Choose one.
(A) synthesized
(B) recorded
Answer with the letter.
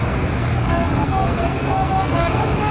A